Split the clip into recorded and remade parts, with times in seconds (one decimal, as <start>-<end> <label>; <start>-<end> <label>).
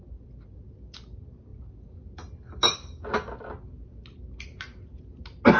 0.0-5.6 recorded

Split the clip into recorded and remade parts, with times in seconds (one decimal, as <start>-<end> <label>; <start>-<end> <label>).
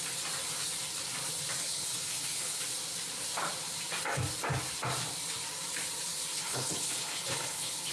0.0-1.6 recorded; 1.6-2.6 remade; 2.6-6.3 recorded; 6.3-7.9 remade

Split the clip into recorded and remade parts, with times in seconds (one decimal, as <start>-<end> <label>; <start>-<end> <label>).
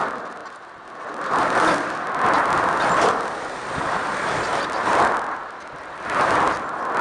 0.0-7.0 recorded